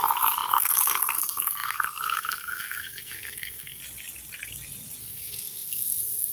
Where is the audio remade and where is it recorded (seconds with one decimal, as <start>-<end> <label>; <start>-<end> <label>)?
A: 0.0-3.8 remade; 3.8-5.0 recorded; 5.0-6.3 remade